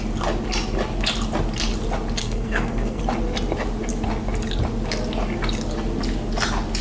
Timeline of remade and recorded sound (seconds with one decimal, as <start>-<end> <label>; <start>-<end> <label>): 0.0-2.2 recorded; 2.2-3.0 remade; 3.0-6.8 recorded